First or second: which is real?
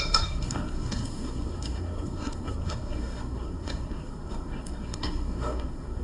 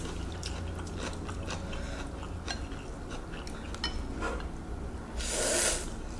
second